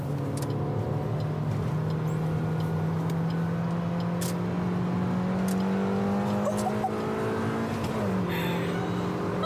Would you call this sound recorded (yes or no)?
yes